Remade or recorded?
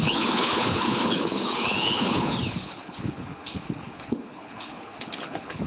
remade